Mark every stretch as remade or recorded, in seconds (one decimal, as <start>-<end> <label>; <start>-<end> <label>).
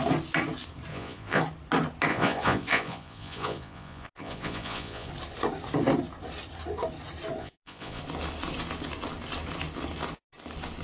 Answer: 0.0-0.9 recorded; 0.9-1.4 remade; 1.4-2.1 recorded; 2.1-5.1 remade; 5.1-7.4 recorded; 7.4-8.0 remade; 8.0-10.8 recorded